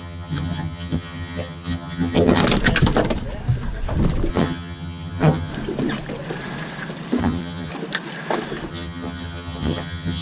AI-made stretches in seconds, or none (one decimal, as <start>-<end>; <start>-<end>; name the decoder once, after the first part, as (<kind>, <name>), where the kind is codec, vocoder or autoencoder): 0.0-2.4 (vocoder, HiFi-GAN); 4.3-5.5; 7.2-7.7; 8.7-10.2